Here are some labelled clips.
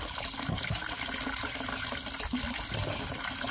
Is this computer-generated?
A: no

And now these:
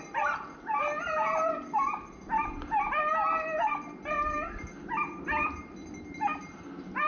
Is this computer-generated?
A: no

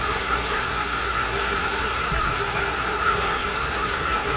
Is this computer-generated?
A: yes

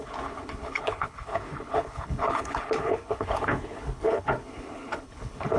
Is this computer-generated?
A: yes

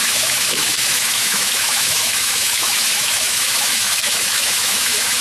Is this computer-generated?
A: yes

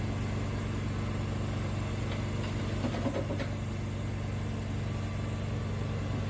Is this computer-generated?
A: no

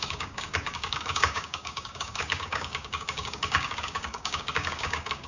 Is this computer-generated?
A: yes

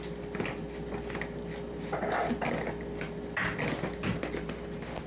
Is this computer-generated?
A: no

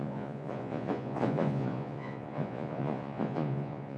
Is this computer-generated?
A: yes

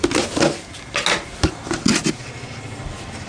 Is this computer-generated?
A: no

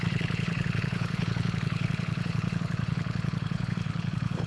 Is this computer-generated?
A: yes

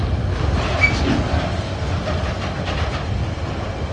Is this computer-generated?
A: no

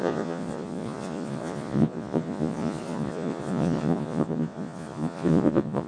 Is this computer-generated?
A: yes